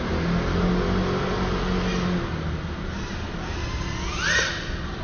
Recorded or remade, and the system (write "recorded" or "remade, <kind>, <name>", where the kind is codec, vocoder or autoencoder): recorded